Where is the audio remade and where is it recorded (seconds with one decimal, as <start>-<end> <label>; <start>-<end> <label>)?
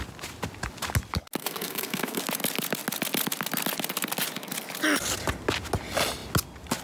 0.0-1.4 recorded; 1.4-2.2 remade; 2.2-6.8 recorded